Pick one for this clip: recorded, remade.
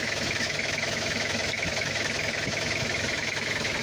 remade